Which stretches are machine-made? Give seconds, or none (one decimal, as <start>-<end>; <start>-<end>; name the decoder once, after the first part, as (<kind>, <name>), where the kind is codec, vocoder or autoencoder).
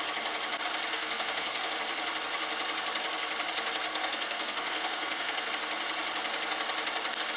0.9-1.7 (codec, SNAC); 3.9-5.5